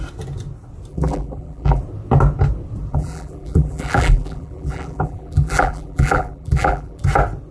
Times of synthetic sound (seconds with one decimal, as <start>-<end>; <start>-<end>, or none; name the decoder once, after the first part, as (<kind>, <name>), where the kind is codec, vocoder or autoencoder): 0.9-1.8 (vocoder, BigVGAN v2); 2.9-7.0